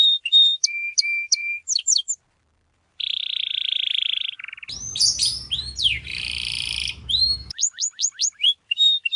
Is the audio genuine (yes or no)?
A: no